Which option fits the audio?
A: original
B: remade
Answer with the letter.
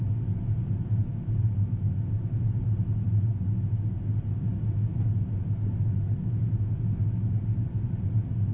A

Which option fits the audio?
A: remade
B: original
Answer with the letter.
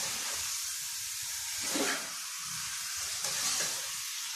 A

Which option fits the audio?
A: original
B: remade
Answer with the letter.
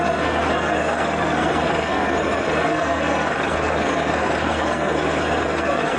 B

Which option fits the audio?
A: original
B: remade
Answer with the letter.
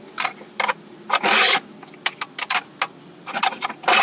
A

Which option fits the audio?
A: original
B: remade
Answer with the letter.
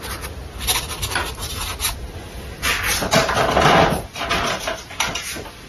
A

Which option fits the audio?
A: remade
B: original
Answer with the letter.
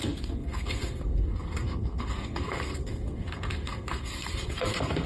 A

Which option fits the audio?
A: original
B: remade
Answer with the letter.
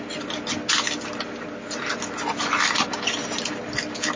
A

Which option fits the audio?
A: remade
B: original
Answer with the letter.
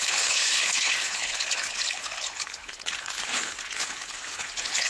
A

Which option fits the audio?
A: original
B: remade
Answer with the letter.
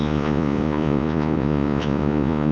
B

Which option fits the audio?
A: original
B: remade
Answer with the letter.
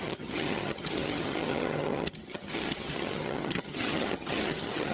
B